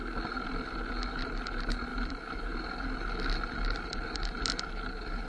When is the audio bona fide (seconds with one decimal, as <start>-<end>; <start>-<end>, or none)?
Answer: 0.0-5.3